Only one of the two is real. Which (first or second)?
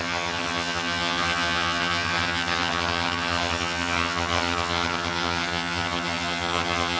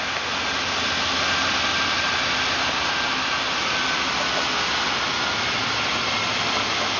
second